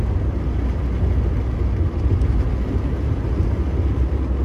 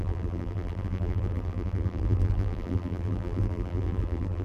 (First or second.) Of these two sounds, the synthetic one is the second